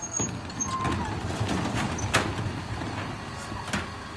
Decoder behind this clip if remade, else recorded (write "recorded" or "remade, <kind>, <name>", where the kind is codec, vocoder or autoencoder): recorded